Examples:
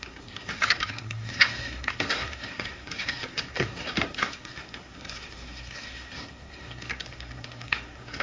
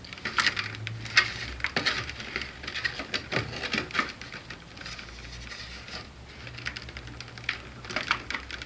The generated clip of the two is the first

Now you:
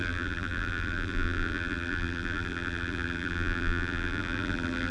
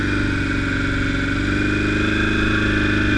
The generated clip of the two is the first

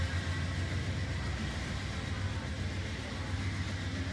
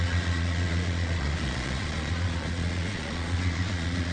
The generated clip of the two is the second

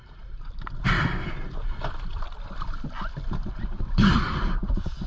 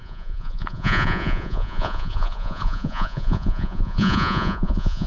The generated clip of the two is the second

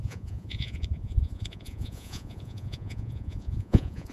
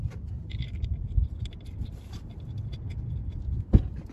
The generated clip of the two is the first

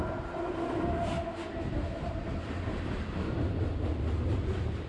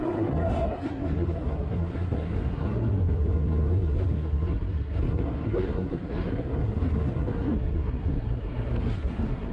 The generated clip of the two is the second